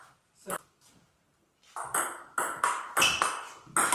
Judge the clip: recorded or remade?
recorded